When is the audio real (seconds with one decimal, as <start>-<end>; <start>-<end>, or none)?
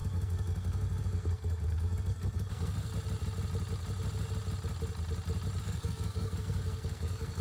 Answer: 2.9-5.6